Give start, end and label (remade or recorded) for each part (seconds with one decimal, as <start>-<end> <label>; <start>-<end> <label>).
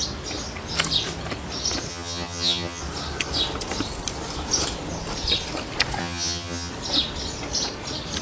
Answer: 0.0-1.9 recorded; 1.9-2.8 remade; 2.8-6.0 recorded; 6.0-6.7 remade; 6.7-8.2 recorded